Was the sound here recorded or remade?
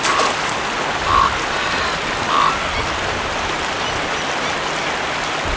recorded